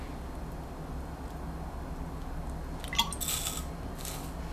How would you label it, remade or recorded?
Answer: recorded